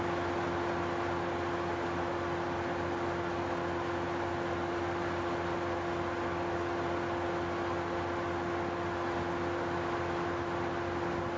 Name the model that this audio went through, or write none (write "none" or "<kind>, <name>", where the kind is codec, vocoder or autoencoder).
none